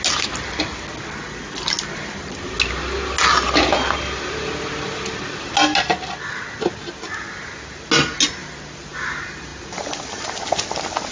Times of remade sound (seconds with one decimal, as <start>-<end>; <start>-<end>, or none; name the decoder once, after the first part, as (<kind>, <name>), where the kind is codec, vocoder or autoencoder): 9.5-10.4 (vocoder, BigVGAN v2)